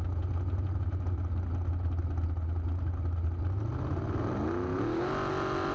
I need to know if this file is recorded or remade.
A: recorded